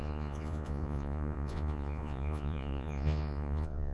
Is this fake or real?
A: fake